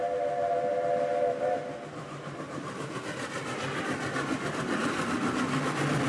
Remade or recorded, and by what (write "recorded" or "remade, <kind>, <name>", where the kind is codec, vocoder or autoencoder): recorded